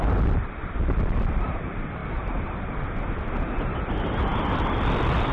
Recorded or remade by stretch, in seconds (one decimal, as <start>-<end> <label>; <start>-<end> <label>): 0.0-2.0 recorded; 2.0-2.7 remade; 2.7-4.3 recorded; 4.3-5.3 remade